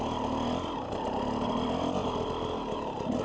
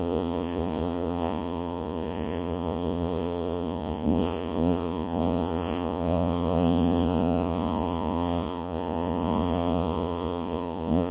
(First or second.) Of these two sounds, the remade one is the second